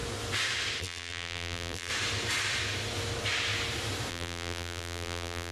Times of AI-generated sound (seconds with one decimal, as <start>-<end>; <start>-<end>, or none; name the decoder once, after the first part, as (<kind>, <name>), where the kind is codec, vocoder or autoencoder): 0.8-1.9 (vocoder, BigVGAN v2); 4.1-5.5